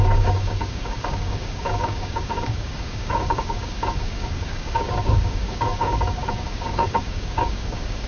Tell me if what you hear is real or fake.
fake